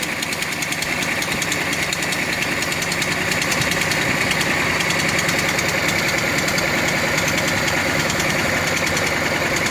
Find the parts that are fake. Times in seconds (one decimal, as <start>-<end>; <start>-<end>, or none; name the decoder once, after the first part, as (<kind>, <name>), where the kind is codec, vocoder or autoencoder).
7.8-8.5 (autoencoder, DAC-VAE)